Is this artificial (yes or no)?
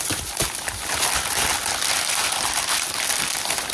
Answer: no